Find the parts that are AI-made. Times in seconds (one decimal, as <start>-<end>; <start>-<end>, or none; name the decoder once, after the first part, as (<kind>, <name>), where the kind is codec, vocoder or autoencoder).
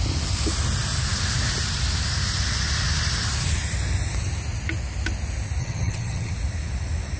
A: 5.6-6.3 (vocoder, HiFi-GAN)